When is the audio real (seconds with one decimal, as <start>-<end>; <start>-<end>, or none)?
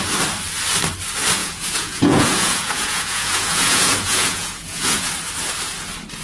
0.0-1.4; 5.1-6.2